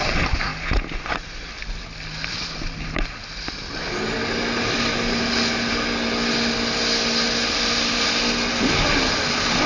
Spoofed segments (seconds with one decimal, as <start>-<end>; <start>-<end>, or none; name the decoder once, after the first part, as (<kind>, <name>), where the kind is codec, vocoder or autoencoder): none